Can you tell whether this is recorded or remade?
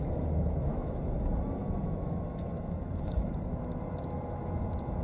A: remade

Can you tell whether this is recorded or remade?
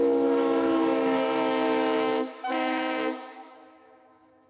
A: remade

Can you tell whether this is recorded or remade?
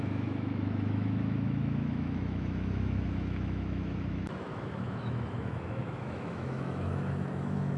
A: remade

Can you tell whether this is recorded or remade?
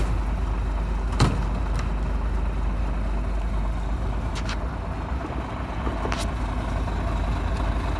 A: recorded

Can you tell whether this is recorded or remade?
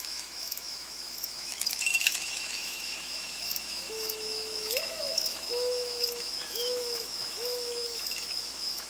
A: remade